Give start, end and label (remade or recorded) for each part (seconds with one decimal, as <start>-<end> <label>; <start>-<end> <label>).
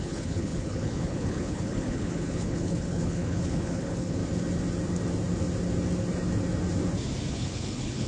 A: 0.0-4.2 remade; 4.2-7.3 recorded; 7.3-8.1 remade